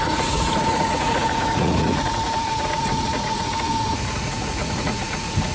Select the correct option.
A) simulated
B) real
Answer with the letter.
A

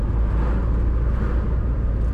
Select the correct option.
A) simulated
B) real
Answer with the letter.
B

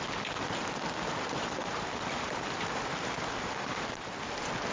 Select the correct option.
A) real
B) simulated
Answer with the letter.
A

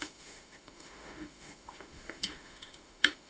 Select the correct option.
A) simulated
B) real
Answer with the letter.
A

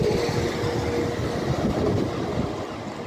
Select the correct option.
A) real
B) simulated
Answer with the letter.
A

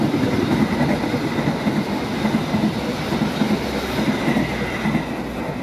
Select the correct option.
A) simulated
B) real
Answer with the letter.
B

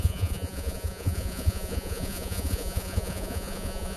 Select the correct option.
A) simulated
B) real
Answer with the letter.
A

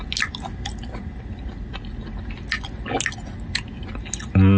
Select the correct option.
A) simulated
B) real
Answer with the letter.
B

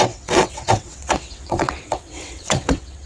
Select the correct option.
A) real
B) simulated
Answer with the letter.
B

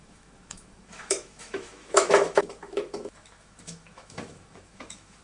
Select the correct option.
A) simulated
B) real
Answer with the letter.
A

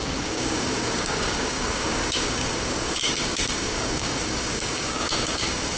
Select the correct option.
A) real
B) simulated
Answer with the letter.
B